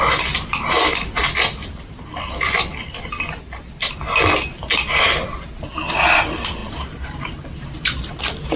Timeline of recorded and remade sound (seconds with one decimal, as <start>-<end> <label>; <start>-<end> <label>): 0.0-6.6 recorded; 6.6-8.2 remade; 8.2-8.6 recorded